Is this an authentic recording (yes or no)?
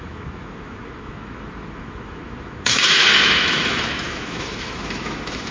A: no